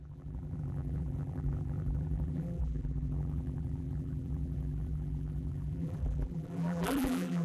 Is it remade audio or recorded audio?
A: remade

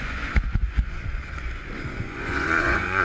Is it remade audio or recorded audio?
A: remade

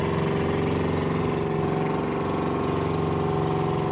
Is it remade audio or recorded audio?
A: recorded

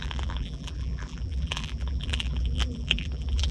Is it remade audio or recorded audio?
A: remade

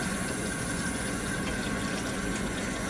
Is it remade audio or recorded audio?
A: remade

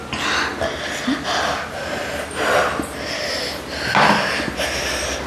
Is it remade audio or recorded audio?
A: recorded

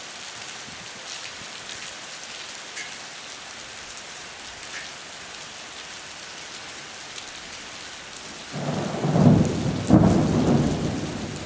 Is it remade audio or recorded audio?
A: recorded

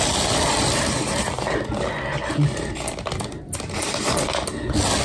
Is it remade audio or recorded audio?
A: recorded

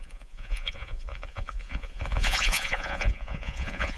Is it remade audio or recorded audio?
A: remade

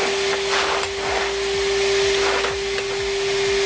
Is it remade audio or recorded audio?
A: recorded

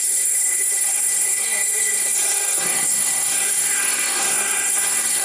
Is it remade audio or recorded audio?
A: remade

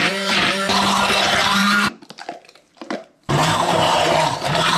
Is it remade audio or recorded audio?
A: remade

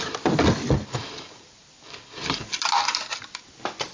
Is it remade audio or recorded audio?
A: recorded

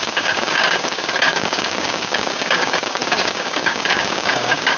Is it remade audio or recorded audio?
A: remade